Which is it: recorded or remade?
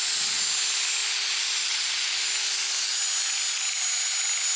recorded